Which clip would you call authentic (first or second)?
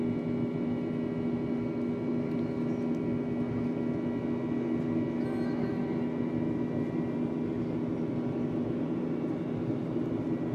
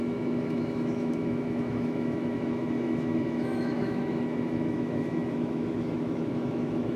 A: first